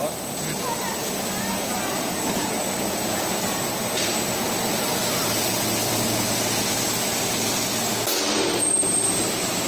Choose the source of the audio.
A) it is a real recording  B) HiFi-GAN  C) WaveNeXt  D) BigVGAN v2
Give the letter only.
A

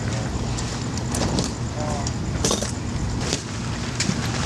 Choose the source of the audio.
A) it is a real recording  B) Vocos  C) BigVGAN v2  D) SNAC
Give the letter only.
A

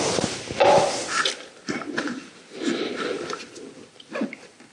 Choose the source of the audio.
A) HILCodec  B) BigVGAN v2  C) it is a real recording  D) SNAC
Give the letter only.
C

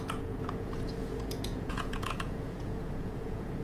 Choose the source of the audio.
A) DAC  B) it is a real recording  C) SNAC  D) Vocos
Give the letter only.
D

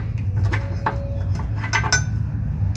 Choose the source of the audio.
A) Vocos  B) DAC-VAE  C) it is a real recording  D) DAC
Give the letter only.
C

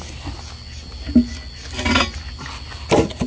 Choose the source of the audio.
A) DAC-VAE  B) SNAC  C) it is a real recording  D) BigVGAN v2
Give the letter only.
C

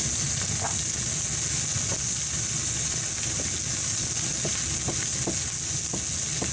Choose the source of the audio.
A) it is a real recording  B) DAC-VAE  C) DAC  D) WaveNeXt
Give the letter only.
A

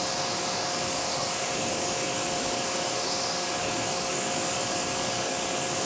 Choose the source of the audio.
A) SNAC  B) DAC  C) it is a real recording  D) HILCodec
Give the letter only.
B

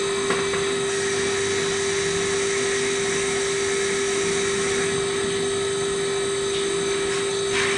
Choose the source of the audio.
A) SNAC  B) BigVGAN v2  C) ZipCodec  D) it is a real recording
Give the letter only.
D